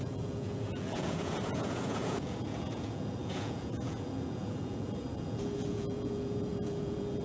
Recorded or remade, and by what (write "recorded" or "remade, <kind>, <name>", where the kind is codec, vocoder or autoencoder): remade, vocoder, Vocos